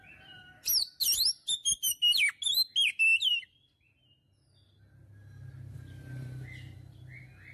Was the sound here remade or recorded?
recorded